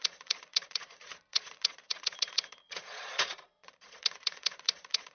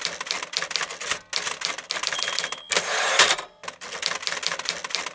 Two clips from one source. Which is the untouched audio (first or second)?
second